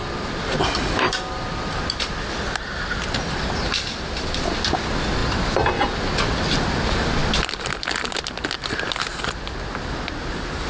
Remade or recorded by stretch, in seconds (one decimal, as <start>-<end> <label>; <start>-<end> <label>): 0.0-4.5 remade; 4.5-10.7 recorded